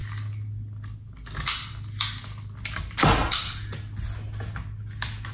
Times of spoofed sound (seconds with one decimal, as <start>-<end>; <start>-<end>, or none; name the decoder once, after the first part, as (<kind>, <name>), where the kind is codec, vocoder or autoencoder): none